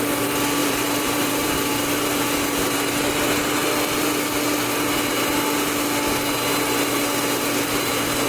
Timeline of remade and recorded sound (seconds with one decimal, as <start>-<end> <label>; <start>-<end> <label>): 0.0-0.6 recorded; 0.6-2.2 remade; 2.2-8.3 recorded